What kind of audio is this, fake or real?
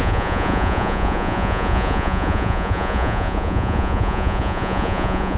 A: fake